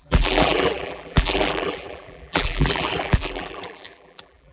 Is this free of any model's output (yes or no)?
no